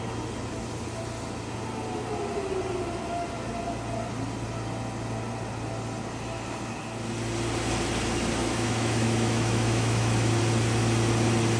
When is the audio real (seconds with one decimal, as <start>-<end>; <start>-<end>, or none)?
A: 0.0-8.4; 10.4-11.6